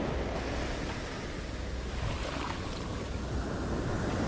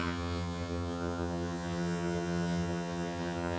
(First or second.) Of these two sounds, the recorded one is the first